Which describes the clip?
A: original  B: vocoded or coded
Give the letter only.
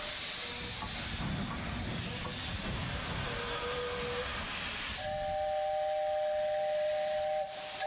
A